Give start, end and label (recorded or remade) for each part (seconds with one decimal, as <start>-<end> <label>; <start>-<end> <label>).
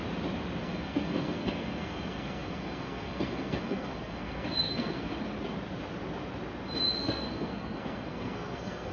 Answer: 0.0-0.6 recorded; 0.6-5.1 remade; 5.1-7.0 recorded; 7.0-8.9 remade